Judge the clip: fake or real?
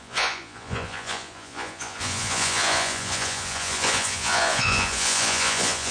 fake